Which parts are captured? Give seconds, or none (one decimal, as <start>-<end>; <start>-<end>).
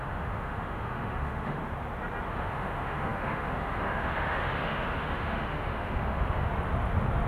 1.6-2.3; 6.5-7.3